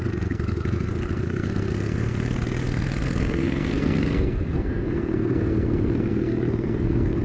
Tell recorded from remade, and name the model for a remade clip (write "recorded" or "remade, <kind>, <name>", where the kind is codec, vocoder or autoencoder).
remade, codec, SNAC